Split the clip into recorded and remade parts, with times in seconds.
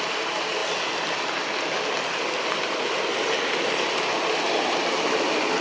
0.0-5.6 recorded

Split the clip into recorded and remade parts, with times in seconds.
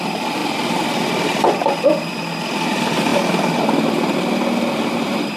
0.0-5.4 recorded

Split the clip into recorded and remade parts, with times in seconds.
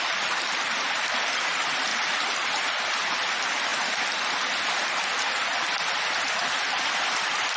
0.0-3.7 remade; 3.7-6.9 recorded; 6.9-7.6 remade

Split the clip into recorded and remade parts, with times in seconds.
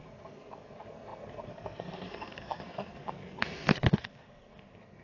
0.0-5.0 remade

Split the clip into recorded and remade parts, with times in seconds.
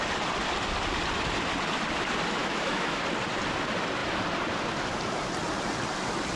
0.0-2.4 recorded; 2.4-3.0 remade; 3.0-6.4 recorded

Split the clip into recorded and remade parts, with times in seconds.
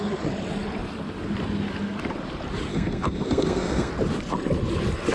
0.0-2.7 recorded; 2.7-3.9 remade; 3.9-5.1 recorded